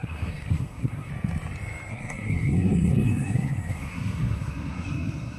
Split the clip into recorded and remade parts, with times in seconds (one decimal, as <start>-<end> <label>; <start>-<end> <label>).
0.0-1.1 remade; 1.1-1.9 recorded; 1.9-5.4 remade